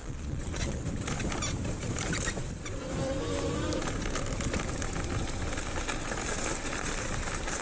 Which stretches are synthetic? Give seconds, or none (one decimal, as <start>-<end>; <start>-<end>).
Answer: 0.0-0.8